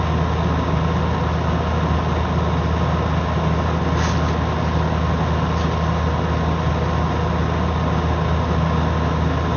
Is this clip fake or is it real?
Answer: real